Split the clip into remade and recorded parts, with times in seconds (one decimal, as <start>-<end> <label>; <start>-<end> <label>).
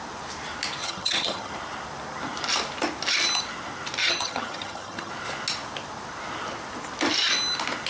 0.0-0.8 recorded; 0.8-1.5 remade; 1.5-4.0 recorded; 4.0-5.1 remade; 5.1-7.9 recorded